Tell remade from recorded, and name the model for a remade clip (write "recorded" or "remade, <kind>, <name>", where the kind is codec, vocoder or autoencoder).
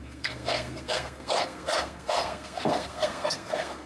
remade, codec, SNAC